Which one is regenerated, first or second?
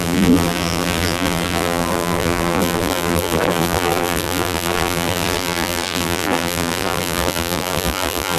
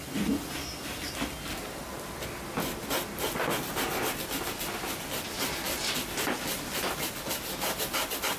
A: first